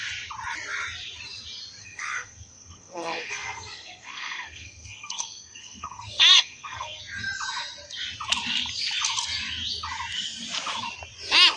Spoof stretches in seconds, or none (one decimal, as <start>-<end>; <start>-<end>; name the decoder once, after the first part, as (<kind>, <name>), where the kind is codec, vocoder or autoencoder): 1.8-7.0 (codec, SNAC)